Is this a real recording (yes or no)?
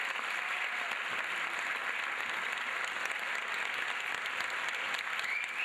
yes